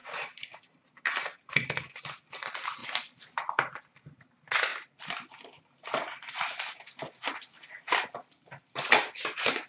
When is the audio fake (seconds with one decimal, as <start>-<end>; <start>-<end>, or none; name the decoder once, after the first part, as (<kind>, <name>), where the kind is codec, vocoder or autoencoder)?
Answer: 2.8-4.3 (vocoder, BigVGAN v2); 4.7-8.9